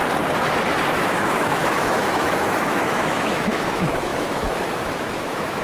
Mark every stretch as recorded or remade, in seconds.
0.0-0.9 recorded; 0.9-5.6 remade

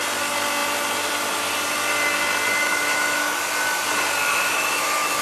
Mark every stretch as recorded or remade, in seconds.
0.0-2.6 recorded; 2.6-3.4 remade; 3.4-4.2 recorded; 4.2-5.2 remade